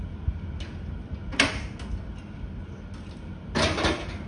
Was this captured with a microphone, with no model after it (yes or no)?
yes